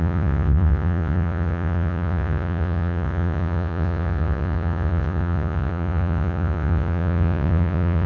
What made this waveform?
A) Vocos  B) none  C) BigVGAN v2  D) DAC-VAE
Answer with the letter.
A